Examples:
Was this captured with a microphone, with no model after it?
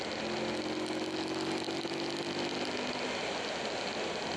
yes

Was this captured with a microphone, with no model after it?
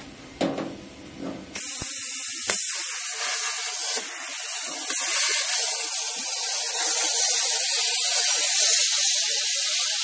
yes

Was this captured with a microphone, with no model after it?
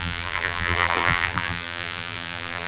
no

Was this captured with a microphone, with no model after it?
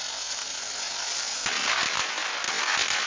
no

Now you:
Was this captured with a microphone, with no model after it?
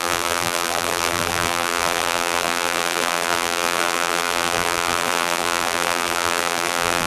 no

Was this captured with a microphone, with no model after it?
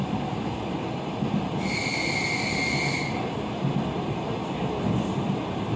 yes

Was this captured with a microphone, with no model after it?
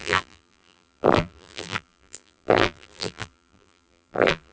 no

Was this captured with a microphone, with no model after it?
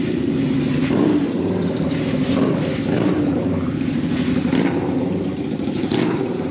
no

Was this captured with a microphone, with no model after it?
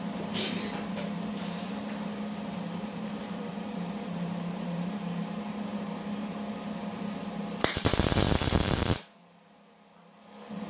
no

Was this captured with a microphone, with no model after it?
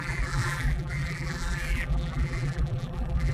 no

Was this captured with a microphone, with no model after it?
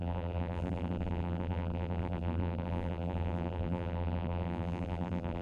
no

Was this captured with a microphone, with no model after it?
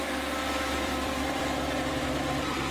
no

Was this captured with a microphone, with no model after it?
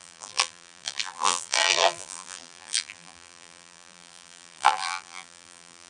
no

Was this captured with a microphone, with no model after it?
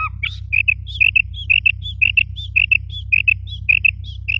yes